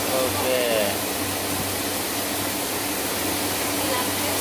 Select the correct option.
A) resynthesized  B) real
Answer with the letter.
B